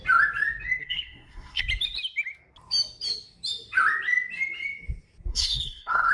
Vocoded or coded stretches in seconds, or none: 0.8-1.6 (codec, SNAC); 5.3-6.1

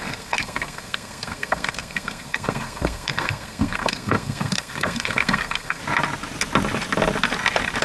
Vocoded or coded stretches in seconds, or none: 0.0-5.8 (codec, SNAC)

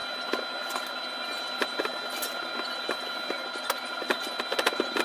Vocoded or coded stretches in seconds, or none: none

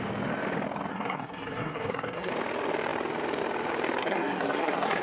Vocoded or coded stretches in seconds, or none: 0.9-2.3 (codec, SNAC); 4.0-5.0

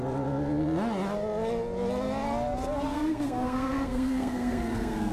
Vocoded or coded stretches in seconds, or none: 2.9-5.1 (codec, SNAC)

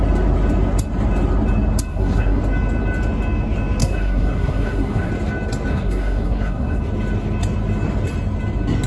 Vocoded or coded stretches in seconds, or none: 1.9-2.4 (codec, SNAC); 3.8-5.1; 5.7-6.8

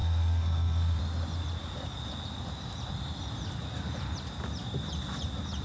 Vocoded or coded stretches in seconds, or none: 0.0-1.0 (codec, SNAC)